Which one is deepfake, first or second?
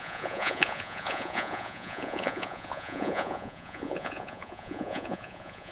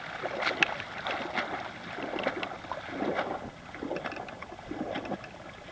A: first